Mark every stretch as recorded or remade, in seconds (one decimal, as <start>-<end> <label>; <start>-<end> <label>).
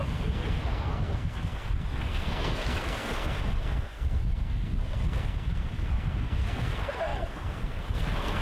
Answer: 0.0-8.4 remade